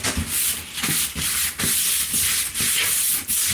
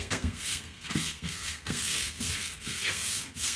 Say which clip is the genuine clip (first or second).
first